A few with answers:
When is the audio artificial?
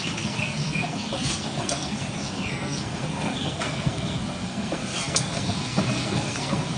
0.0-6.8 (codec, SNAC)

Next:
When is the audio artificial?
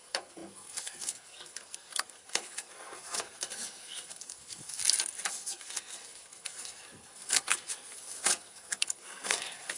0.0-4.8 (codec, SNAC); 5.3-9.8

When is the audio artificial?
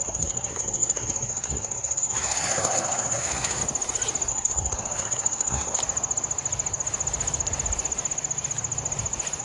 0.0-3.6 (codec, SNAC); 4.3-5.8